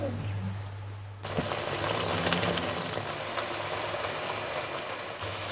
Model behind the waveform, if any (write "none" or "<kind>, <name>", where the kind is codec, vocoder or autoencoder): none